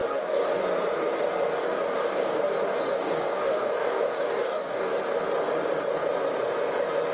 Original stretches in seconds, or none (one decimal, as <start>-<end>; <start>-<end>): 0.6-1.6; 2.4-2.9; 5.0-7.1